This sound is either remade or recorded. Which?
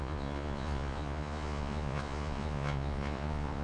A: remade